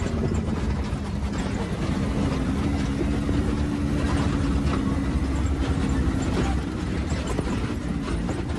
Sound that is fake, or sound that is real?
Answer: real